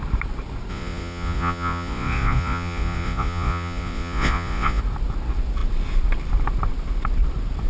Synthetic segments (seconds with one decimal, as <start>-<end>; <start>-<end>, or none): 0.7-4.8